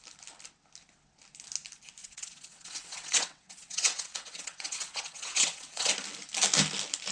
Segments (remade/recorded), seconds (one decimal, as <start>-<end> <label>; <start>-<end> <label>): 0.0-2.0 recorded; 2.0-5.9 remade; 5.9-7.1 recorded